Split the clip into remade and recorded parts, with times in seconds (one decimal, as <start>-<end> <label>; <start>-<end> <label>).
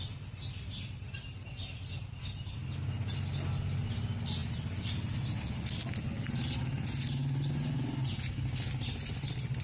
0.0-4.4 recorded; 4.4-6.3 remade; 6.3-9.6 recorded